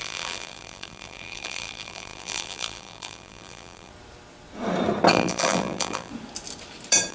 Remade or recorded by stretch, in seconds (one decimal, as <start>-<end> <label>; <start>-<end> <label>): 0.0-3.9 remade; 3.9-5.1 recorded; 5.1-6.1 remade; 6.1-7.1 recorded